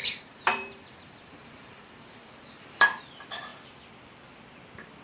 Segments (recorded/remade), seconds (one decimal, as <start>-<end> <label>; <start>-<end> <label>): 0.0-3.0 remade; 3.0-5.0 recorded